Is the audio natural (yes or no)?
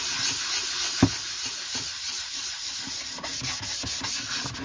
yes